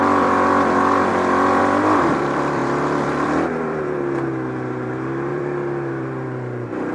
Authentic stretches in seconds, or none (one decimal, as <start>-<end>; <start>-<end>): none